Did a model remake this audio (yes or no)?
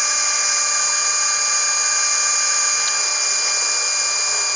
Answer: no